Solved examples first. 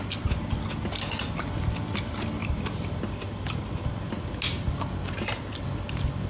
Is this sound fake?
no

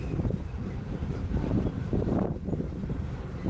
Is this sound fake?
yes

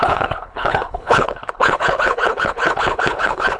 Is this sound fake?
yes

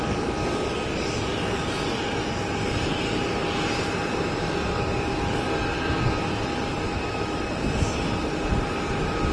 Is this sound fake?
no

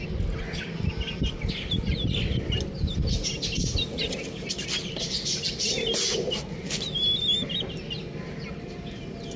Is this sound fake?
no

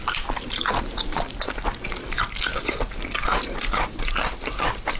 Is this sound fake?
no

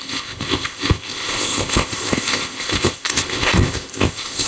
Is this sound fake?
yes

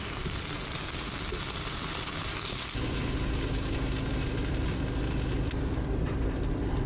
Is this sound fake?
yes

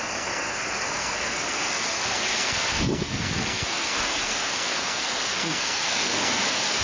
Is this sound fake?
yes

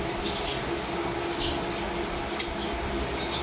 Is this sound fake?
no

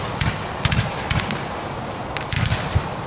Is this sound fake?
no